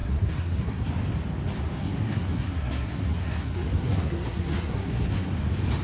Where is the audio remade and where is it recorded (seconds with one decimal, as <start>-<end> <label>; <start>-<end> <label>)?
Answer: 0.0-0.8 remade; 0.8-1.8 recorded; 1.8-5.3 remade; 5.3-5.8 recorded